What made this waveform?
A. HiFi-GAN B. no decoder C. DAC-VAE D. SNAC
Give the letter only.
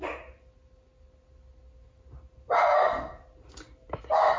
B